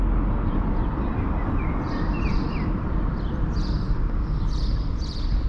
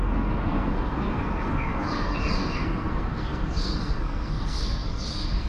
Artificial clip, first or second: second